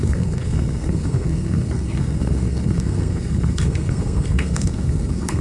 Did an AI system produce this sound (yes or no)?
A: yes